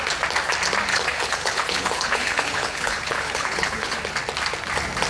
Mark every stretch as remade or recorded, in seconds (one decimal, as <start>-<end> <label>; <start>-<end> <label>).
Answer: 0.0-0.9 recorded; 0.9-4.0 remade; 4.0-5.1 recorded